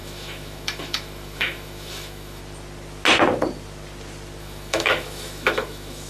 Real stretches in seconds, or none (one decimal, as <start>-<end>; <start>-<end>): 2.4-4.4